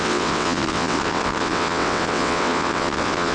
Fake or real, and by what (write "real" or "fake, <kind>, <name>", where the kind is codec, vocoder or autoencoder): fake, vocoder, WaveNeXt